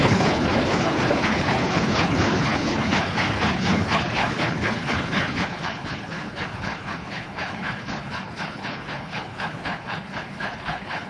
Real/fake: fake